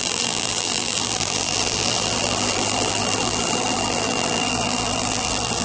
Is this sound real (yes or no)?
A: no